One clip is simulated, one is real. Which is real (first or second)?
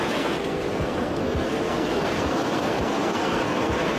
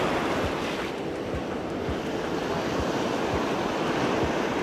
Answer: second